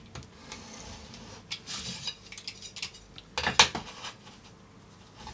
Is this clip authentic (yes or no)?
yes